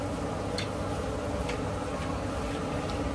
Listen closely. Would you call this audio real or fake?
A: real